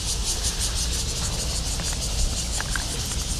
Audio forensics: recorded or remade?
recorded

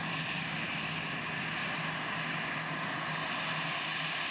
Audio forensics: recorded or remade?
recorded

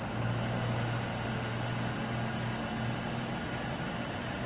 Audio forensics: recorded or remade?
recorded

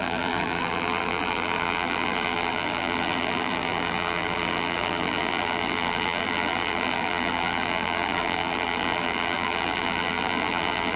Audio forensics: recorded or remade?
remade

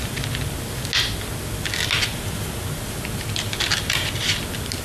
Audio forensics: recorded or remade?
recorded